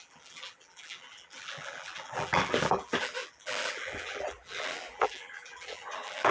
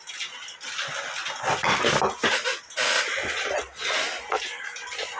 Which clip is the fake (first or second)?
first